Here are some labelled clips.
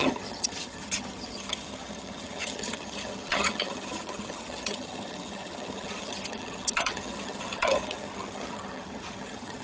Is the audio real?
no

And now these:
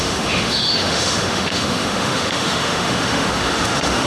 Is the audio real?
no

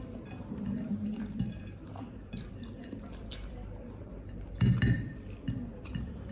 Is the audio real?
no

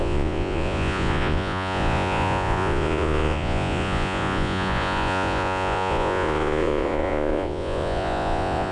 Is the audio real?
no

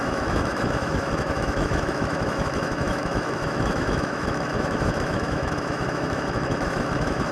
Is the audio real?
no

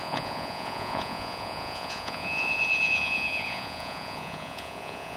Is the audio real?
no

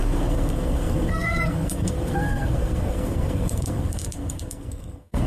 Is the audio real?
no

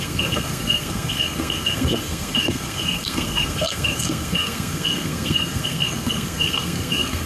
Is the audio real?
no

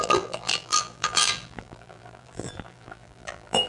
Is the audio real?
no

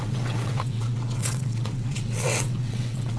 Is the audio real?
no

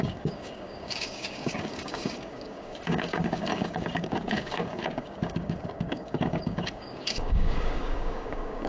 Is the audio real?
no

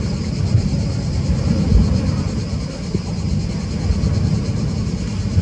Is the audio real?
yes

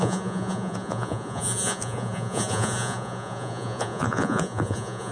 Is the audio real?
no